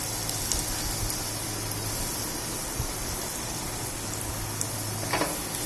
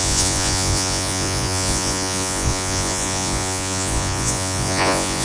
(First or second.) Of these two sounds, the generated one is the second